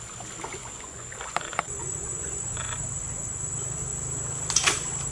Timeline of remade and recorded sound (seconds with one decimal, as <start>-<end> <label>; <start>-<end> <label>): 0.0-0.6 recorded; 0.6-2.8 remade; 2.8-5.1 recorded